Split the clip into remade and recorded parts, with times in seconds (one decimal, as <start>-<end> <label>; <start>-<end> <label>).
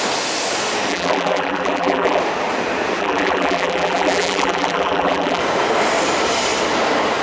0.0-0.9 recorded; 0.9-2.2 remade; 2.2-3.0 recorded; 3.0-5.4 remade; 5.4-7.2 recorded